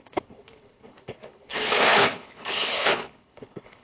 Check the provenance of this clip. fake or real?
fake